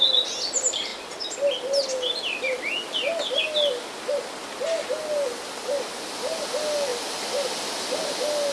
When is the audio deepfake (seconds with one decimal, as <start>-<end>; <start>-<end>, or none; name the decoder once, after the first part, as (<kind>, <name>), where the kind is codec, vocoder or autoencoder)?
none